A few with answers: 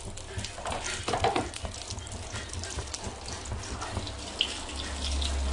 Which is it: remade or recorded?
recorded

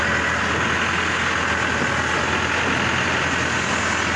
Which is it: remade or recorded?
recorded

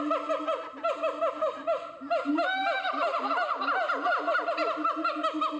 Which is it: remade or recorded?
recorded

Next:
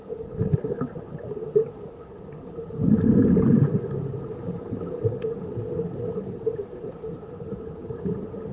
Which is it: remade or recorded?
recorded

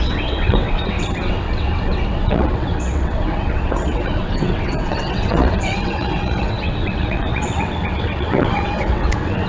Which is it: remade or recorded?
remade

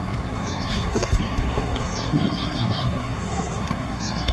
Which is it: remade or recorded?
remade